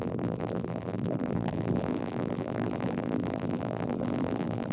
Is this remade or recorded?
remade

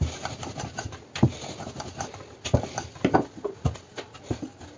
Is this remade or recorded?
recorded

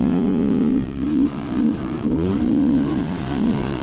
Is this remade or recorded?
remade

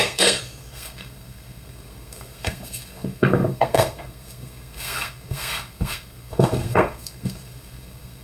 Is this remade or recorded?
remade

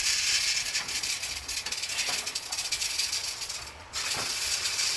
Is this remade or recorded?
remade